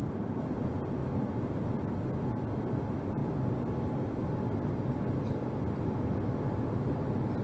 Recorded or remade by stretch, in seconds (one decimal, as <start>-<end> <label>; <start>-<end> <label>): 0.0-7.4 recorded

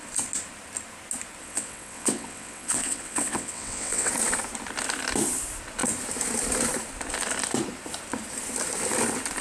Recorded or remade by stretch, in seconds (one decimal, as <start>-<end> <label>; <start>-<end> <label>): 0.0-1.4 recorded; 1.4-4.1 remade; 4.1-9.4 recorded

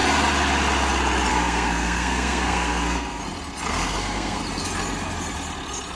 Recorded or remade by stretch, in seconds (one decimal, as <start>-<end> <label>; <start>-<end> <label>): 0.0-1.3 recorded; 1.3-3.2 remade; 3.2-3.7 recorded; 3.7-4.4 remade; 4.4-6.0 recorded

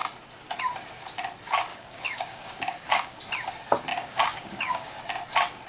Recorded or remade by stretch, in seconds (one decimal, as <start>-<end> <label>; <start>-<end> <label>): 0.0-1.7 recorded; 1.7-3.2 remade; 3.2-3.9 recorded; 3.9-5.0 remade; 5.0-5.7 recorded

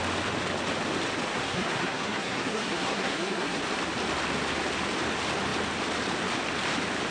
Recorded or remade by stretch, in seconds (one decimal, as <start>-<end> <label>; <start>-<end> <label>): 0.0-1.3 recorded; 1.3-3.6 remade; 3.6-7.1 recorded

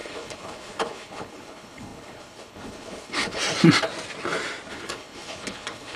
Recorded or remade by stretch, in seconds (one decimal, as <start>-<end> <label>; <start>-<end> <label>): 0.0-3.4 remade; 3.4-4.7 recorded; 4.7-6.0 remade

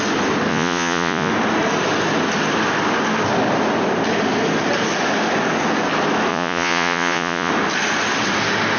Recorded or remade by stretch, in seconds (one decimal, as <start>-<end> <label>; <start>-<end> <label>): 0.0-0.5 recorded; 0.5-1.3 remade; 1.3-6.3 recorded; 6.3-7.5 remade; 7.5-8.8 recorded